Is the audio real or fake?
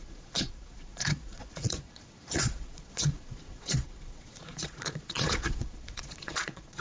fake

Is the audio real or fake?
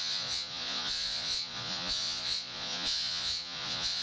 fake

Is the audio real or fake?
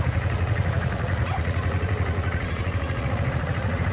fake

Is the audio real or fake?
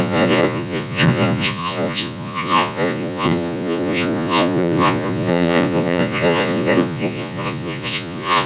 fake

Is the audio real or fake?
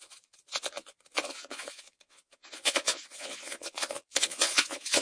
fake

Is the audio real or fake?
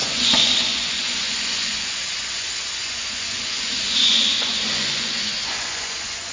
fake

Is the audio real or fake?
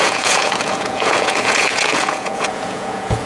fake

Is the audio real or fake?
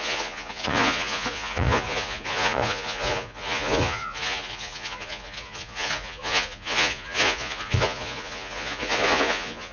fake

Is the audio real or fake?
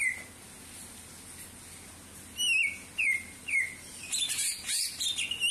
real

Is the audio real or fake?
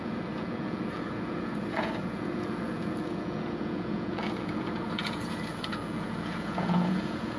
fake